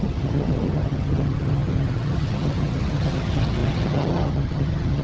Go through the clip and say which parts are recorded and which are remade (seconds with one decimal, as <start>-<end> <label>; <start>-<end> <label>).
0.0-5.0 remade

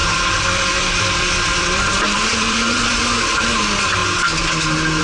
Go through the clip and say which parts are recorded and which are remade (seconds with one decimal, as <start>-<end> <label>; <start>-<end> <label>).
0.0-3.0 remade; 3.0-5.0 recorded